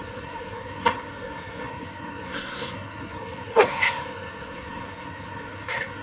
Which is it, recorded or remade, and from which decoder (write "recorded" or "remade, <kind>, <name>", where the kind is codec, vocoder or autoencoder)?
remade, codec, SNAC